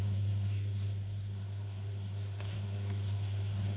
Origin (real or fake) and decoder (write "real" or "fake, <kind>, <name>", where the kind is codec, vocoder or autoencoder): fake, codec, SNAC